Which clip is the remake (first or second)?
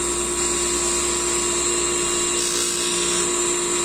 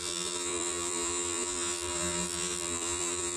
second